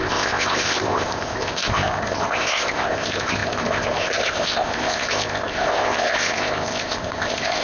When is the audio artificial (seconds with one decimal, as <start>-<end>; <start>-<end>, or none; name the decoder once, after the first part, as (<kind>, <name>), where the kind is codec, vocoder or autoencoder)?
0.0-7.6 (codec, ZipCodec)